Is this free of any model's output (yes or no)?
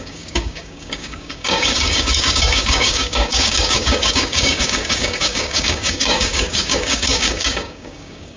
no